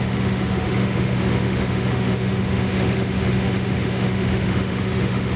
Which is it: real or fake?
fake